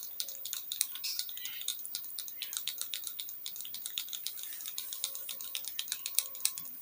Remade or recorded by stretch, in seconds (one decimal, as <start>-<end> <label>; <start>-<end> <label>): 0.0-6.8 remade